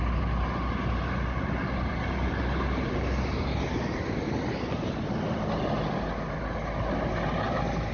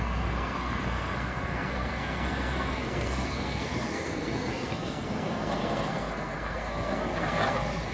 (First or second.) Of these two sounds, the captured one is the first